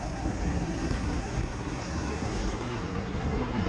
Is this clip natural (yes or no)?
no